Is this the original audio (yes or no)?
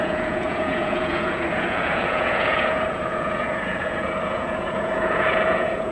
no